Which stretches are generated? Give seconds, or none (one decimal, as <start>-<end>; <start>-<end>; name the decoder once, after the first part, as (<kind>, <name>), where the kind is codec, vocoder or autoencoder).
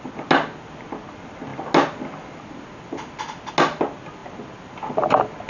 none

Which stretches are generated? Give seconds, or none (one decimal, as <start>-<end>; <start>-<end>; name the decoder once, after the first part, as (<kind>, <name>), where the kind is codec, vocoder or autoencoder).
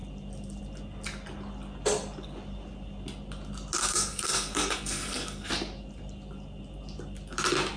3.8-5.5 (codec, SNAC)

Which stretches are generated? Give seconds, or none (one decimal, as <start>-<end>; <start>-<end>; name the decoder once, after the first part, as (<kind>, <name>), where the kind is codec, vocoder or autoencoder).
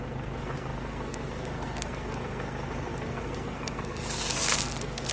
0.0-5.1 (codec, SNAC)